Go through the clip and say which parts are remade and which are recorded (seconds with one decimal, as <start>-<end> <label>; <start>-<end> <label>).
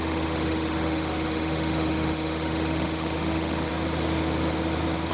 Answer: 0.0-3.7 remade; 3.7-5.1 recorded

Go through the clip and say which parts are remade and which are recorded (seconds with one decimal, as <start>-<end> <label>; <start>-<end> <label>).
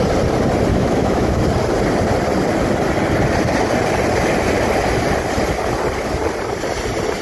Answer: 0.0-0.7 recorded; 0.7-1.4 remade; 1.4-7.2 recorded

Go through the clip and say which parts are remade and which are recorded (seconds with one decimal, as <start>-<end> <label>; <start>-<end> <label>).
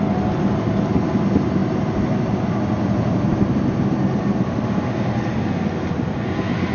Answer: 0.0-6.7 recorded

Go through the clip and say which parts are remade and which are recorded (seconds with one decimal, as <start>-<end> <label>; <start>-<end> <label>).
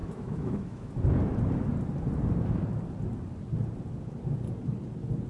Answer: 0.0-0.9 remade; 0.9-5.3 recorded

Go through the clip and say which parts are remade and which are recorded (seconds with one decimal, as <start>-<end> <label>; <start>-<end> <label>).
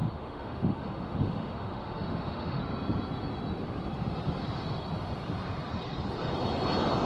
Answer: 0.0-2.6 remade; 2.6-7.1 recorded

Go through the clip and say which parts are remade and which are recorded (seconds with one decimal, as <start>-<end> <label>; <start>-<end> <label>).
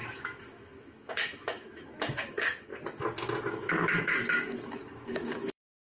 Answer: 0.0-2.7 remade; 2.7-3.5 recorded; 3.5-5.8 remade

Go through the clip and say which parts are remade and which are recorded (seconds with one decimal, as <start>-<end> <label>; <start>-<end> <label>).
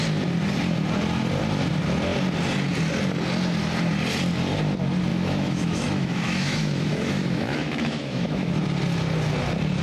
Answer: 0.0-5.1 recorded; 5.1-8.5 remade; 8.5-9.8 recorded